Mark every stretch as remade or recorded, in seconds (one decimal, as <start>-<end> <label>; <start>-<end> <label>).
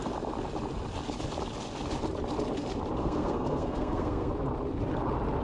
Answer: 0.0-3.0 recorded; 3.0-4.3 remade; 4.3-5.4 recorded